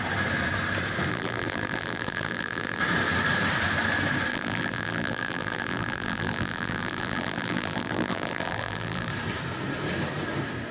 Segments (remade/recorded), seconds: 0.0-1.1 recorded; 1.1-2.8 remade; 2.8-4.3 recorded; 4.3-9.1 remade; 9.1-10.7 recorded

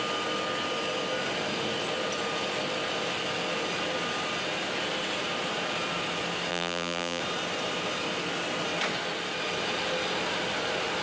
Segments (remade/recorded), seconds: 0.0-6.5 recorded; 6.5-7.2 remade; 7.2-11.0 recorded